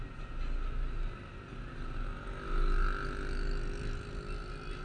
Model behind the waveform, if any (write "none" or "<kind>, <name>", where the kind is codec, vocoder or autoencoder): none